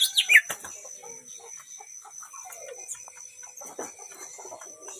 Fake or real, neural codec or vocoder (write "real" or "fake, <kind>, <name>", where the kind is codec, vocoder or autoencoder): real